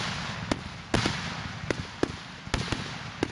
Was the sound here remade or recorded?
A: recorded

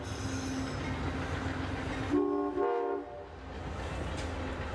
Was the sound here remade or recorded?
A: recorded